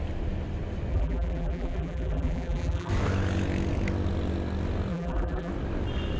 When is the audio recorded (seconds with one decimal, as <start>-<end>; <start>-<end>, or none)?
0.0-0.9; 2.9-4.9; 5.5-6.2